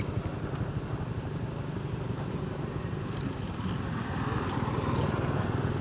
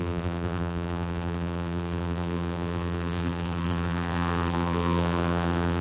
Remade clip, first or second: second